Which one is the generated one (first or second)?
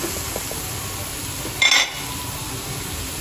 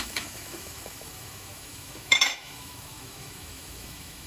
second